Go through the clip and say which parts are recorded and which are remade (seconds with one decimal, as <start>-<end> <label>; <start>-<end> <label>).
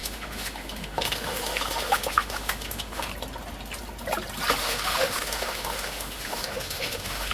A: 0.0-3.1 remade; 3.1-4.6 recorded; 4.6-7.3 remade